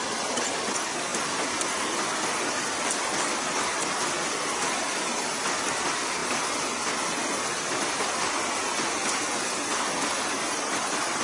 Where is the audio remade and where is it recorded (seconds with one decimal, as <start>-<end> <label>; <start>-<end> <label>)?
0.0-11.2 recorded